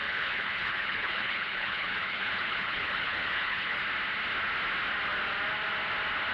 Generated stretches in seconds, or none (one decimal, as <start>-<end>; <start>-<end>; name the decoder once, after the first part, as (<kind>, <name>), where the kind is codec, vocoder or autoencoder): 0.0-3.8 (codec, HILCodec)